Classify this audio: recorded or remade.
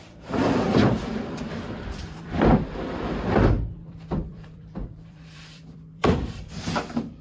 remade